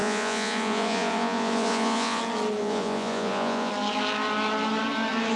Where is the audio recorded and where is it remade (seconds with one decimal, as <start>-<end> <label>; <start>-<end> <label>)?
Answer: 0.0-2.2 remade; 2.2-2.6 recorded; 2.6-3.7 remade; 3.7-5.4 recorded